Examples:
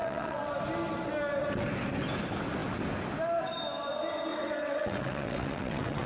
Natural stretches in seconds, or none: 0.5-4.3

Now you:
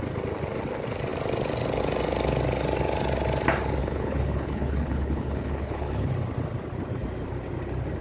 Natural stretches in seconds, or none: 0.0-3.8; 6.1-8.0